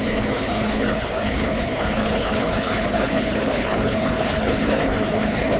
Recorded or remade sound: remade